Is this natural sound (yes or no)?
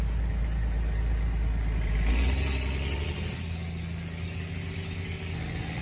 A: yes